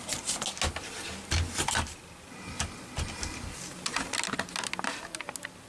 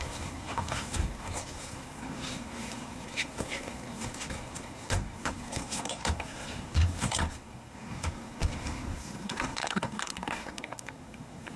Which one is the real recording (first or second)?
first